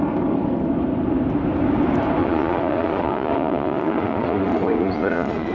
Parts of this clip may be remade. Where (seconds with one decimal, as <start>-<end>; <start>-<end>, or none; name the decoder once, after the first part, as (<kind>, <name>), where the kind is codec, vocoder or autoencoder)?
2.2-5.5 (vocoder, Vocos)